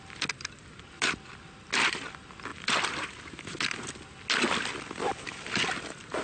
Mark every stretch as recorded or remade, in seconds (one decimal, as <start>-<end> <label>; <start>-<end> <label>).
0.0-6.2 recorded